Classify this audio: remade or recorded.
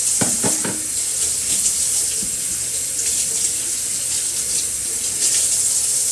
recorded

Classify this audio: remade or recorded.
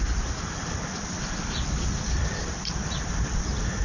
remade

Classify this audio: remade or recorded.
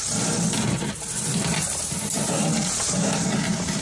remade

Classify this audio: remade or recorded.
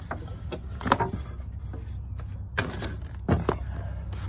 recorded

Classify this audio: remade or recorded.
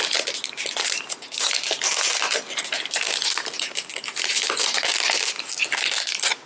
recorded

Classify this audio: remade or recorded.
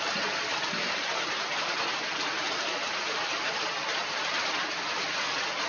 remade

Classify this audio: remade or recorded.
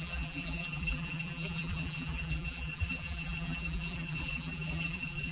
remade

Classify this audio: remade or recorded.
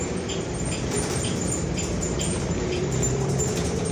remade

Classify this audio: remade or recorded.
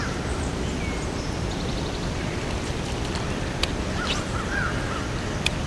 recorded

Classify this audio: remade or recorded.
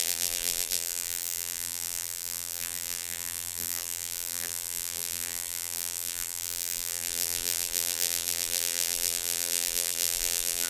remade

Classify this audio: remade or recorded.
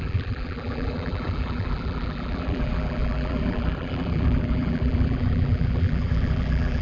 remade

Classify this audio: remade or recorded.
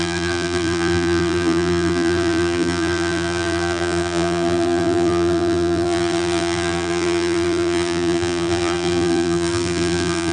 remade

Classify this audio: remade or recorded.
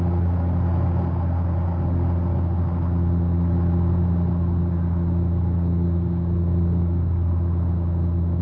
recorded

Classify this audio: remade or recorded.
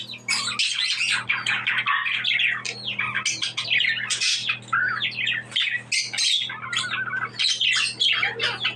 recorded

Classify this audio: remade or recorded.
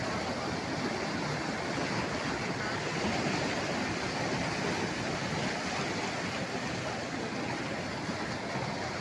recorded